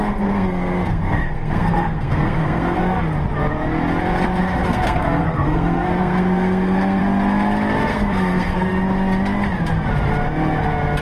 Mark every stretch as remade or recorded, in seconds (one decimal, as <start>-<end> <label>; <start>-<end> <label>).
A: 0.0-2.8 remade; 2.8-4.4 recorded; 4.4-7.0 remade; 7.0-7.8 recorded; 7.8-8.7 remade; 8.7-11.0 recorded